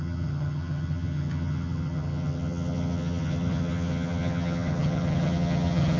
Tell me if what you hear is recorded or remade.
remade